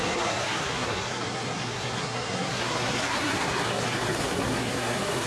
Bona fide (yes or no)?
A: no